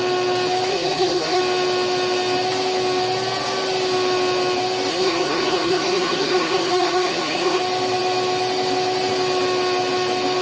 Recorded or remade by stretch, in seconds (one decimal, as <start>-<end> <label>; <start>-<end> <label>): 0.0-0.7 recorded; 0.7-1.4 remade; 1.4-4.9 recorded; 4.9-7.6 remade; 7.6-10.4 recorded